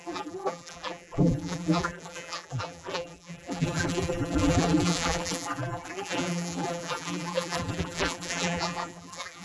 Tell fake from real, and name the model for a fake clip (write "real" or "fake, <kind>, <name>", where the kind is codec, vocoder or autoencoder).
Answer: fake, vocoder, BigVGAN v2